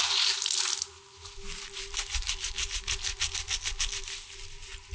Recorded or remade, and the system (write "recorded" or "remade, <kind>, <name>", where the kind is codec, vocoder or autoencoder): recorded